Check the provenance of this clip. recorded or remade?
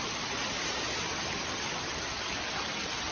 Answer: recorded